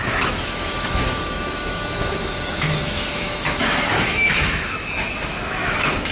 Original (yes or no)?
no